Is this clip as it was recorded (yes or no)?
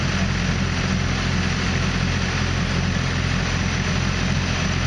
yes